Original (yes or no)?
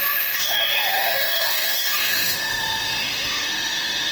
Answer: no